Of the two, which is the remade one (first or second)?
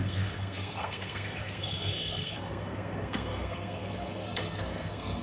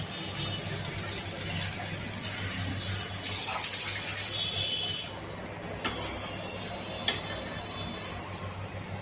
first